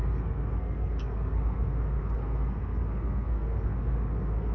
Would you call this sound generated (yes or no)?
yes